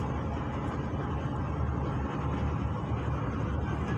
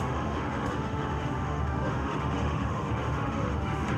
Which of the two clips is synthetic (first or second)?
second